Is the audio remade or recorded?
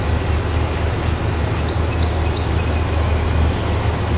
recorded